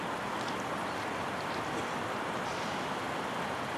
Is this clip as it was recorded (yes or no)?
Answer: yes